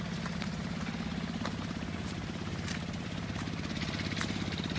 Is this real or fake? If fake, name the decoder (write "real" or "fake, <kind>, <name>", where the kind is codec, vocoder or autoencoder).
real